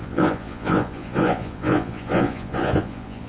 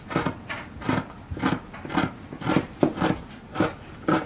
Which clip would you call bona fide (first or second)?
second